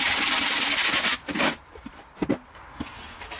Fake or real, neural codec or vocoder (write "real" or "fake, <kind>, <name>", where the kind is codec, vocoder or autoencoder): real